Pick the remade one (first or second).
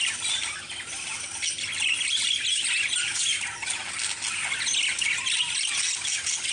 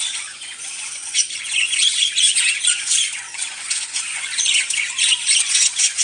second